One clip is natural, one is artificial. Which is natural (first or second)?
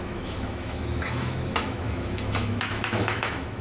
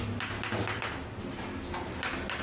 second